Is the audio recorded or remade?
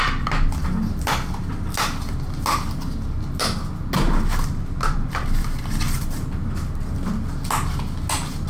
recorded